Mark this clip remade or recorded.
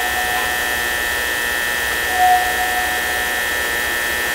recorded